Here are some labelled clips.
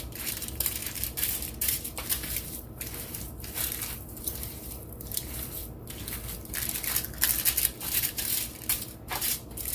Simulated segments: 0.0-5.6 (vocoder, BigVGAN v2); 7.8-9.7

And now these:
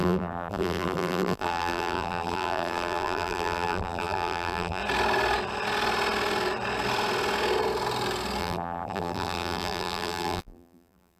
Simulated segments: 0.0-4.8 (vocoder, BigVGAN v2); 8.4-11.2

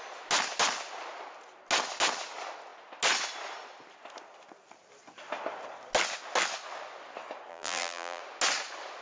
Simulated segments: 7.5-8.2 (vocoder, BigVGAN v2)

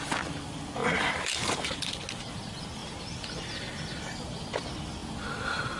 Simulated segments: 0.8-1.9 (vocoder, BigVGAN v2)

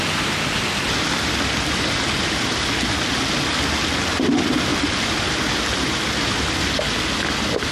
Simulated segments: 4.7-5.5 (vocoder, BigVGAN v2)

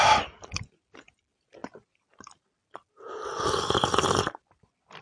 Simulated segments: none

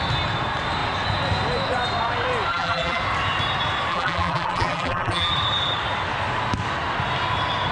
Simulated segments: 2.5-3.0 (vocoder, BigVGAN v2); 3.9-5.3